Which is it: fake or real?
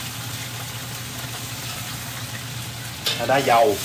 real